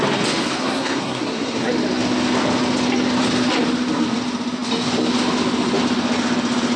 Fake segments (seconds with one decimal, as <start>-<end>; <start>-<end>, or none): 0.6-1.7